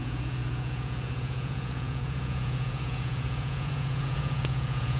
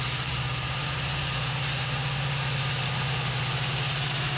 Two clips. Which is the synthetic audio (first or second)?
first